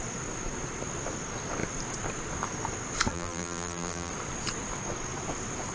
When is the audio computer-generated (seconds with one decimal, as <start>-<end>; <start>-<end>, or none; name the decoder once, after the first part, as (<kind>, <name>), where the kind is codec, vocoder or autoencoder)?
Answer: 3.1-4.1 (vocoder, BigVGAN v2)